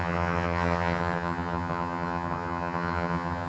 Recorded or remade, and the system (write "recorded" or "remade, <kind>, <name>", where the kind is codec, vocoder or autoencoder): remade, vocoder, HiFi-GAN